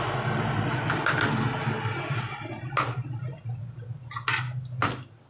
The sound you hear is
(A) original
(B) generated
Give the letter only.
A